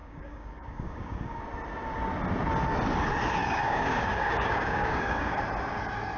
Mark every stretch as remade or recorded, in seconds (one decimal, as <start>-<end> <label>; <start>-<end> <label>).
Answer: 0.0-1.4 remade; 1.4-3.4 recorded; 3.4-5.4 remade; 5.4-6.2 recorded